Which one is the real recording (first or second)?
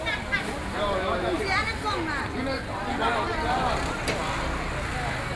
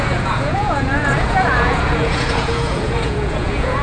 first